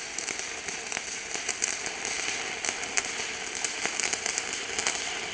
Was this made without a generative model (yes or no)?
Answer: no